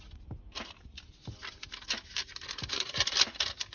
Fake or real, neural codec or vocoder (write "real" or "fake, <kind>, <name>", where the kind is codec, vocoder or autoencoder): real